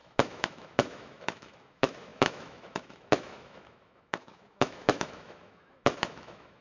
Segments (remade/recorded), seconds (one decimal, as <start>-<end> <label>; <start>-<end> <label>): 0.0-6.6 remade